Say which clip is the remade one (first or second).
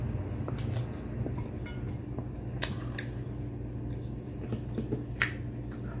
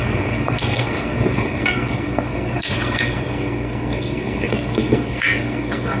second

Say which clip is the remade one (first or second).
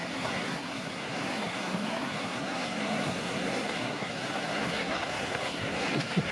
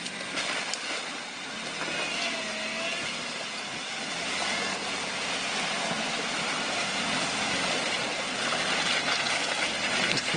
first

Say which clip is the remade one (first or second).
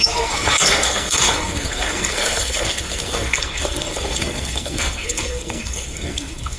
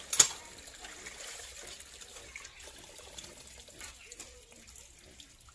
first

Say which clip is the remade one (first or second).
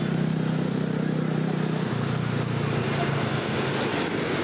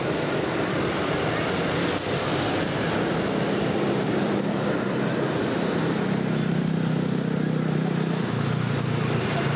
second